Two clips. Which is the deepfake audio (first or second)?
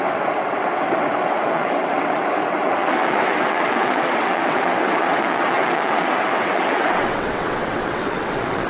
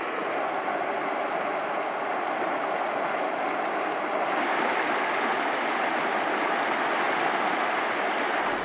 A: first